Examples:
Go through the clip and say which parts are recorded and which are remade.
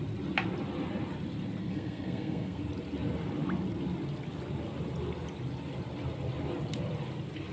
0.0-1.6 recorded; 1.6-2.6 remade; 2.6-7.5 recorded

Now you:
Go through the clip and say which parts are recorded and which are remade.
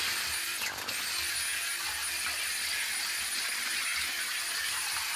0.0-5.2 recorded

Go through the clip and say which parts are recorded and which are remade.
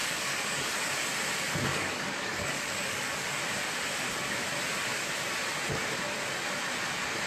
0.0-0.9 remade; 0.9-1.7 recorded; 1.7-3.4 remade; 3.4-7.3 recorded